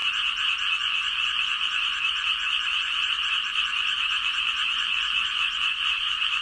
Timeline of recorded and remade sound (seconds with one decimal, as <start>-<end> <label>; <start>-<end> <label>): 0.0-0.7 recorded; 0.7-6.4 remade